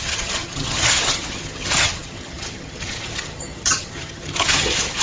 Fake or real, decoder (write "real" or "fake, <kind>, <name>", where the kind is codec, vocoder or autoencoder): fake, vocoder, HiFi-GAN